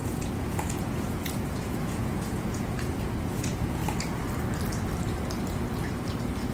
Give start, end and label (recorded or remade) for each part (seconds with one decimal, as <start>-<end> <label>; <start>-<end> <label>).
0.0-3.8 remade; 3.8-6.5 recorded